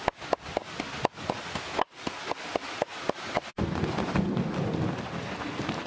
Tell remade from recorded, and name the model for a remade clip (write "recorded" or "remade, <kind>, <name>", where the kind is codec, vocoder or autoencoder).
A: recorded